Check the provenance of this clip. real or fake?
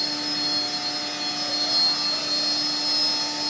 real